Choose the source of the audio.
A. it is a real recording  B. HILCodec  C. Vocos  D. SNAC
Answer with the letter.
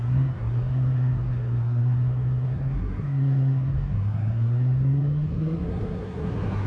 D